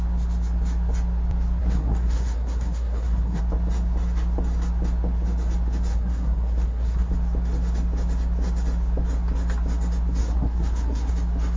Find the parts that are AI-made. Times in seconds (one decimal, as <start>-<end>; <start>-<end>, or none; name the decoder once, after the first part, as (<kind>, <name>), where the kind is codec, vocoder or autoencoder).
1.6-3.4 (codec, SNAC); 5.9-7.1; 10.2-11.1